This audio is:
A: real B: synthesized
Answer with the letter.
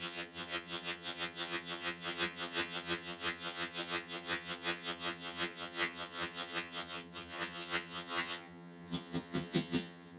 B